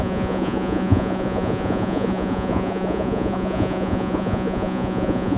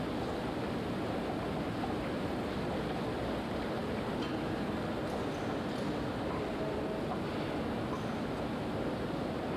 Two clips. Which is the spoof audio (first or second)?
first